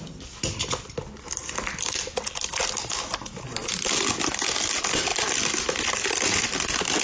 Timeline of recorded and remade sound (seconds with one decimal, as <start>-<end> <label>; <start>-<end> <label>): 0.0-1.4 recorded; 1.4-2.6 remade; 2.6-3.6 recorded; 3.6-4.6 remade; 4.6-7.0 recorded